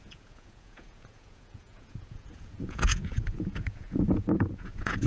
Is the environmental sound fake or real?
fake